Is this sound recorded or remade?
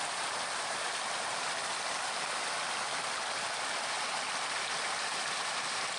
recorded